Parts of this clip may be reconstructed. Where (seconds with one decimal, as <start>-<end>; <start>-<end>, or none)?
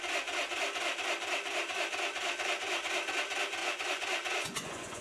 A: 3.6-5.0